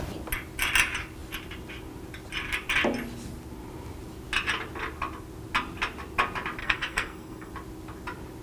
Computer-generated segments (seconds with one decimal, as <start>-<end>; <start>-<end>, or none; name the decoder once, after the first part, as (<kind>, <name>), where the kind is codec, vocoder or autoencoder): 6.6-7.5 (codec, SNAC)